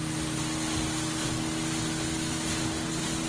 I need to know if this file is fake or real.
real